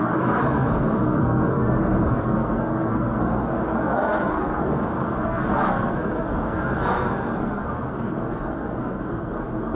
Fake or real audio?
fake